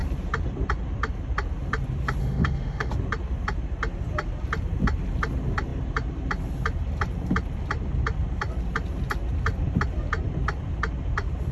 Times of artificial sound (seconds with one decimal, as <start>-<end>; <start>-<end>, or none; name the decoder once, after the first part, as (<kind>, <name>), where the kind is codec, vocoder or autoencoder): 2.2-2.9 (autoencoder, DAC-VAE)